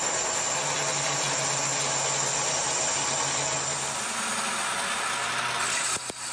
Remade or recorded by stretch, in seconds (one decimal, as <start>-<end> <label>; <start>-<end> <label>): 0.0-6.3 recorded